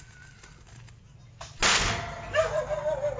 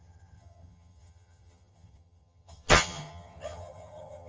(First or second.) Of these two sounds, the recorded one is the first